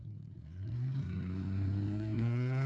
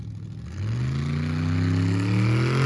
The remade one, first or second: first